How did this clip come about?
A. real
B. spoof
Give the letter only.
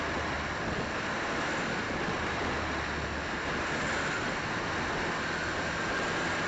A